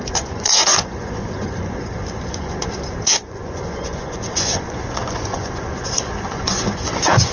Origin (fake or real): fake